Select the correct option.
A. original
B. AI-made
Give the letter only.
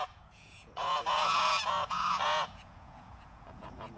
B